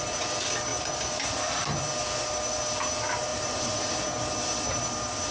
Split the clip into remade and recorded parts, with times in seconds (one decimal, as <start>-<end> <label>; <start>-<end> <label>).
0.0-3.3 recorded; 3.3-4.3 remade; 4.3-5.3 recorded